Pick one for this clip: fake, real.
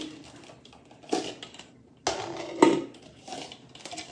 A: real